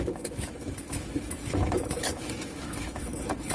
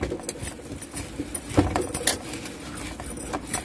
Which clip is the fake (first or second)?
first